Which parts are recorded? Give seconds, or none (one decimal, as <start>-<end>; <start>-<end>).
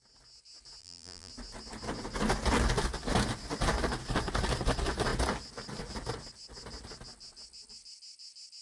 0.0-0.8; 1.3-8.6